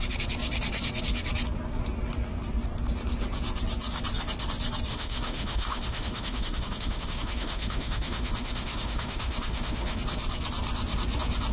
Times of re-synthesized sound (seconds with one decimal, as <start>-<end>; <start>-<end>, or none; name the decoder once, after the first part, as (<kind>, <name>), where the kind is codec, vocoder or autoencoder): 4.9-10.0 (autoencoder, DAC-VAE)